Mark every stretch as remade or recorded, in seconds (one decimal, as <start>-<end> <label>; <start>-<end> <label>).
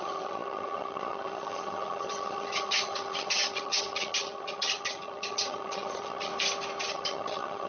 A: 0.0-6.3 remade; 6.3-6.9 recorded; 6.9-7.7 remade